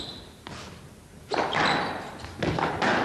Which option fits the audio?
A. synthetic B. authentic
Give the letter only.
B